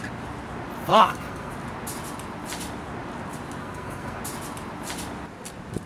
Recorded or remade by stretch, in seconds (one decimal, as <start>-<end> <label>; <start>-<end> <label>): 0.0-0.9 recorded; 0.9-1.5 remade; 1.5-3.6 recorded; 3.6-4.2 remade; 4.2-5.9 recorded